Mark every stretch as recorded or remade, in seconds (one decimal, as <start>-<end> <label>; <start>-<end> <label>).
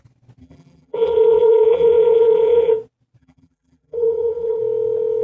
0.0-0.4 recorded; 0.4-2.7 remade; 2.7-3.2 recorded; 3.2-4.6 remade; 4.6-5.2 recorded